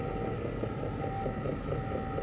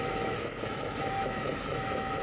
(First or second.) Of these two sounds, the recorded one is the first